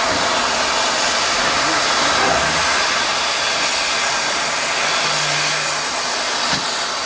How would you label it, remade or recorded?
recorded